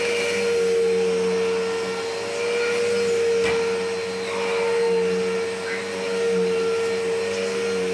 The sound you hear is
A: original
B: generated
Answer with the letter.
A